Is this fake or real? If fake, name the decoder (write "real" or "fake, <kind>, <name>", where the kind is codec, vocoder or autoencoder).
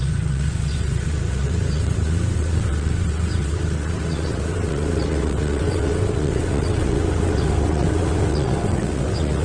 fake, vocoder, WaveNeXt